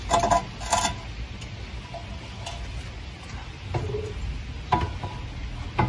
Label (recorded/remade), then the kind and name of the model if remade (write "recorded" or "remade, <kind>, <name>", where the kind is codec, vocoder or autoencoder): recorded